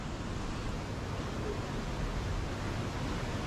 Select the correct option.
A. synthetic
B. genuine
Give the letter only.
B